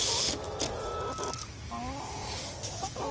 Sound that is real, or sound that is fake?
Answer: real